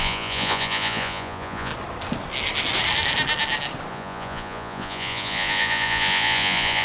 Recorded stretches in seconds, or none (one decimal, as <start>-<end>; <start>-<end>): 1.7-3.9